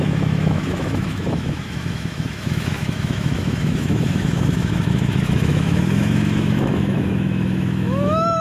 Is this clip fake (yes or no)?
yes